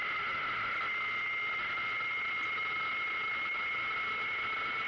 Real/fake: real